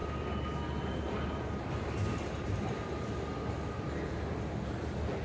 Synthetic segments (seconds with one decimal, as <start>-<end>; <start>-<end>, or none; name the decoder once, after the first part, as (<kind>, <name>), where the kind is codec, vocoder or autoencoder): 1.6-2.2 (vocoder, BigVGAN v2)